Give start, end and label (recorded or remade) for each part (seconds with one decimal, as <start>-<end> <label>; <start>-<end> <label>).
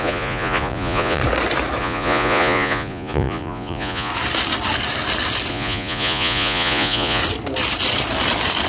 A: 0.0-1.2 remade; 1.2-1.8 recorded; 1.8-4.1 remade; 4.1-5.5 recorded; 5.5-7.2 remade; 7.2-8.7 recorded